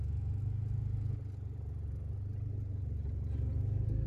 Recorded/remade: recorded